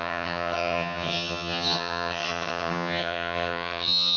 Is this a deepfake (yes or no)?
yes